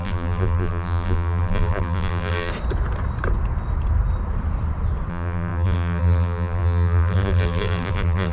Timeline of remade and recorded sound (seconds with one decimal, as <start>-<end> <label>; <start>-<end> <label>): 0.0-2.5 remade; 2.5-5.1 recorded; 5.1-8.3 remade